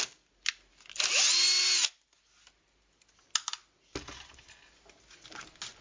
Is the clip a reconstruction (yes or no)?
no